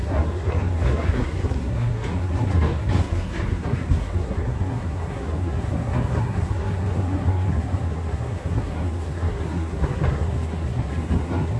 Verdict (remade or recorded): remade